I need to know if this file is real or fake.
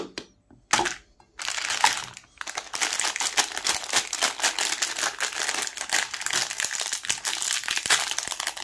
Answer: real